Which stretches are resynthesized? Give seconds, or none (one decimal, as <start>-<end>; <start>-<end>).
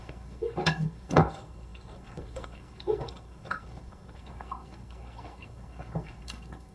0.0-6.7